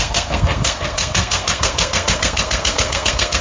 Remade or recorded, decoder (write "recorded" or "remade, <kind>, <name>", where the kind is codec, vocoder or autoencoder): remade, codec, SNAC